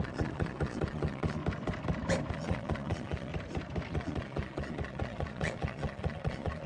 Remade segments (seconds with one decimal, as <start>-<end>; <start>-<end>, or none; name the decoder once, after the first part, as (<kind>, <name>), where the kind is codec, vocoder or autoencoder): 0.0-1.4 (vocoder, Vocos); 2.3-3.3; 3.9-6.7